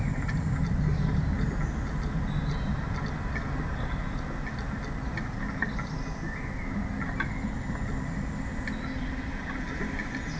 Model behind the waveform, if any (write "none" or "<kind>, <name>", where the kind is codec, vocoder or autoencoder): none